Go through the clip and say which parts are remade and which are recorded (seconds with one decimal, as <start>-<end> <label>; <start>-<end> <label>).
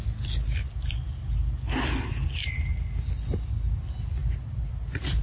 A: 0.0-5.2 recorded